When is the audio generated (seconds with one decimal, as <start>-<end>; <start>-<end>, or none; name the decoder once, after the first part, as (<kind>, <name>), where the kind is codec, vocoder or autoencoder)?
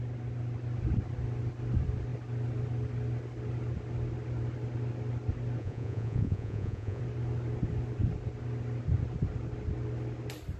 5.6-7.0 (vocoder, Vocos)